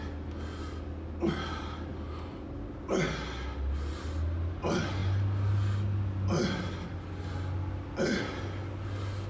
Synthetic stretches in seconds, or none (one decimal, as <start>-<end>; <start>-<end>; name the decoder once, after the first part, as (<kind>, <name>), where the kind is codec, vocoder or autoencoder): none